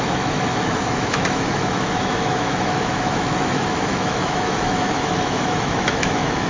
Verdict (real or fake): fake